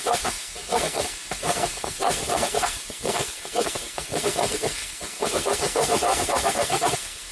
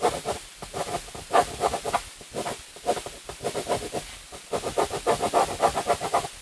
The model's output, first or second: first